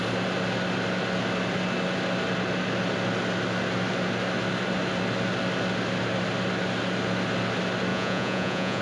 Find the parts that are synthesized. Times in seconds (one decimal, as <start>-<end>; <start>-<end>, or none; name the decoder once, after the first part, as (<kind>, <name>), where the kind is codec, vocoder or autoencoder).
7.9-8.8 (vocoder, Vocos)